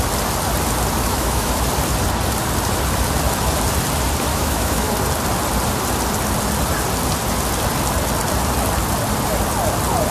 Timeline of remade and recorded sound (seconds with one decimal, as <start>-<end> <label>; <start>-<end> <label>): 0.0-1.0 recorded; 1.0-1.5 remade; 1.5-4.3 recorded; 4.3-4.9 remade; 4.9-10.1 recorded